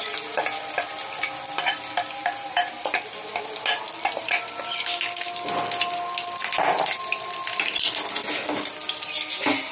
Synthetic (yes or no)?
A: no